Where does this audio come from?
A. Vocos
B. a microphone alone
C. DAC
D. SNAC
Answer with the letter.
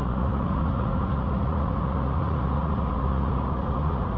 A